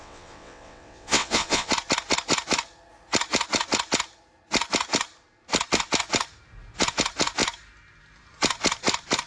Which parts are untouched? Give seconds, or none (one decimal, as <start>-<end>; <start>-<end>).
1.7-9.3